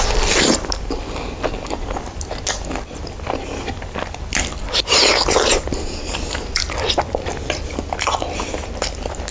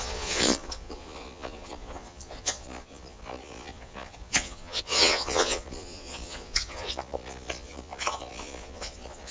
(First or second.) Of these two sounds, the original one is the first